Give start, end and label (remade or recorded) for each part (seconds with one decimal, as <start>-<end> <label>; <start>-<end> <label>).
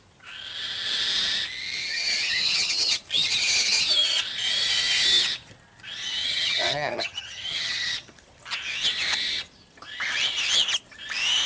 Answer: 0.0-1.8 recorded; 1.8-3.0 remade; 3.0-6.2 recorded; 6.2-7.9 remade; 7.9-11.5 recorded